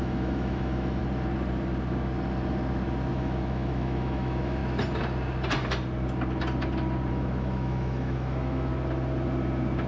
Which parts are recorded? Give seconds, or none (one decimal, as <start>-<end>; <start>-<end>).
1.0-3.1; 4.6-7.1; 8.7-9.9